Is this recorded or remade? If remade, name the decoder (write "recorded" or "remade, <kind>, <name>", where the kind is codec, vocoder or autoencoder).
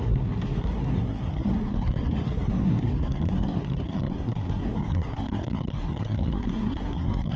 remade, codec, SNAC